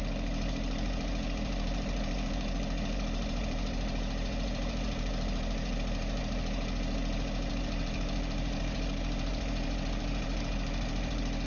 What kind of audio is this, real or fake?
fake